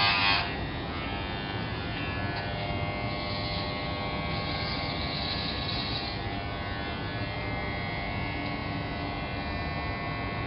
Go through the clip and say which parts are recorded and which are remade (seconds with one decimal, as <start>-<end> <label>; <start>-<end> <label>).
0.0-10.5 recorded